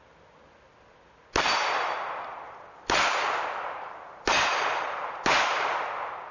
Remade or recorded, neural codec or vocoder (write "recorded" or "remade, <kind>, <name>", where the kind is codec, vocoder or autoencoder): recorded